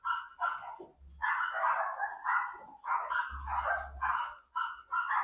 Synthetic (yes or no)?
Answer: no